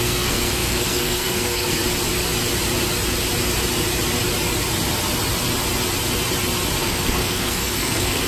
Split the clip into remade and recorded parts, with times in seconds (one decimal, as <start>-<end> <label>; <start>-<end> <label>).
0.0-1.8 remade; 1.8-6.8 recorded; 6.8-8.3 remade